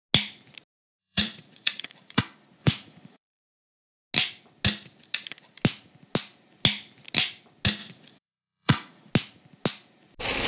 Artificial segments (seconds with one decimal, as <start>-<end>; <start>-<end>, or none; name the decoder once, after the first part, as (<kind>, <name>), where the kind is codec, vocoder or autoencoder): 1.0-2.2 (vocoder, Vocos); 2.6-3.4; 7.8-9.1